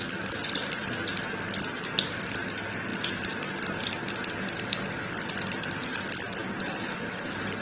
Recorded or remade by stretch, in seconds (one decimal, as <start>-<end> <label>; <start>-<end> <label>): 0.0-7.6 recorded